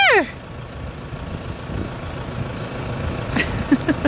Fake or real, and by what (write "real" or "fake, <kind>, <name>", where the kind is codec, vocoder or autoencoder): real